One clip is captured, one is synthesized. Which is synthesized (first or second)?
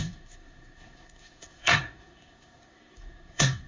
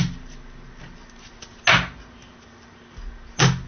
first